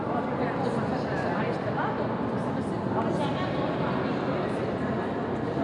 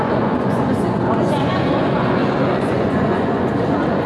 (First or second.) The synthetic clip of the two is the second